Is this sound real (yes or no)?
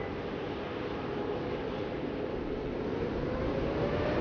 yes